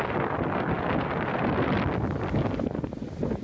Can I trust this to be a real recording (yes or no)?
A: yes